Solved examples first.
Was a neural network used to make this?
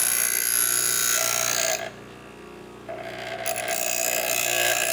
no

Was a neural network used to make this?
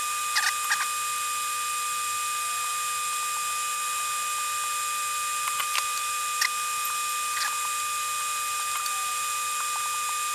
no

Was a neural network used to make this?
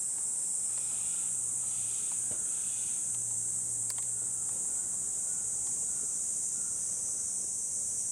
no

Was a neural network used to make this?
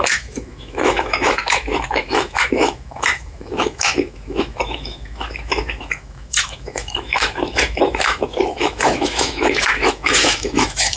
yes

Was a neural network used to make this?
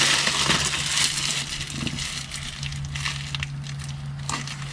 no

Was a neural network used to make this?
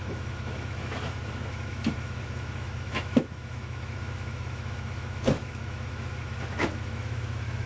yes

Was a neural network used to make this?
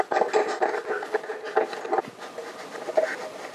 no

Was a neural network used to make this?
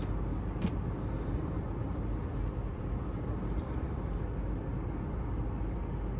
no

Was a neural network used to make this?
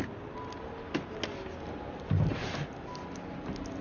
no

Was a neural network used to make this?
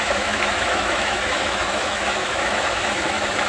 yes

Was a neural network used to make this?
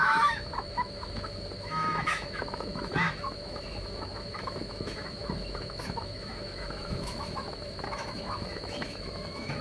yes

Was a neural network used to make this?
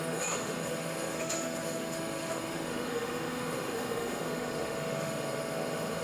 yes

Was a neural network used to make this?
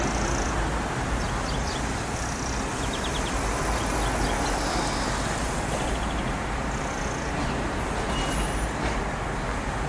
no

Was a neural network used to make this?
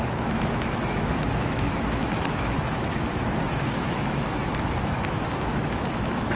yes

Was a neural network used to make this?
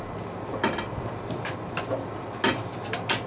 no